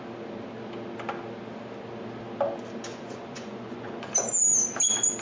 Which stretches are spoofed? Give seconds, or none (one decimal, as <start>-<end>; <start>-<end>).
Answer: 2.9-4.1